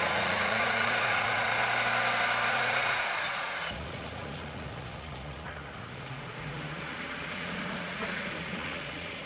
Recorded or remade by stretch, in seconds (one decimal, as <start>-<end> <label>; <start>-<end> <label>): 0.0-1.6 remade; 1.6-2.5 recorded; 2.5-9.3 remade